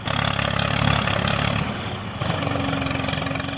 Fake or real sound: real